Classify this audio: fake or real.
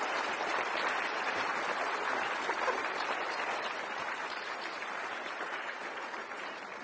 fake